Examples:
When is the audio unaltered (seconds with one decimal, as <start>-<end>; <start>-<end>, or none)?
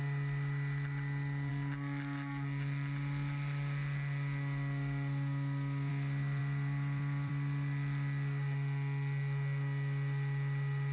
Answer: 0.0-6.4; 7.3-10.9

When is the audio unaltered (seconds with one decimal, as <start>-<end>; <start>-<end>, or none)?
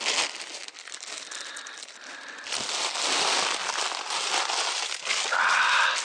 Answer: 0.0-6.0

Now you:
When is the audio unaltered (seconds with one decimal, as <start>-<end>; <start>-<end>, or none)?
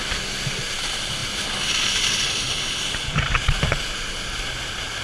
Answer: 0.0-5.0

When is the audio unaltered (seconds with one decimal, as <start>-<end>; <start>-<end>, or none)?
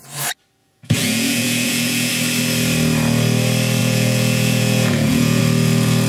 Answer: 0.0-0.6; 2.1-3.8; 5.4-6.1